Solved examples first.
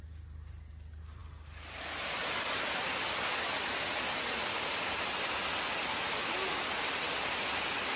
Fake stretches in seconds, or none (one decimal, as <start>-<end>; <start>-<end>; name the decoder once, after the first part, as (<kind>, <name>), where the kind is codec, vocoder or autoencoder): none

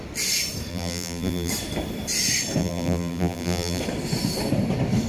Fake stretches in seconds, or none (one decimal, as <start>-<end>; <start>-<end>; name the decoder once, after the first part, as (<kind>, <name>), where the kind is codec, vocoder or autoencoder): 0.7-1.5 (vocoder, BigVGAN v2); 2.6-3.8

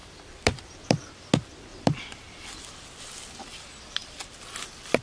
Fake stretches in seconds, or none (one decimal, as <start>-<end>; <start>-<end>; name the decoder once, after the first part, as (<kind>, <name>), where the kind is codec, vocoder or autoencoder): 0.0-1.1 (vocoder, BigVGAN v2); 1.7-2.6; 4.0-5.0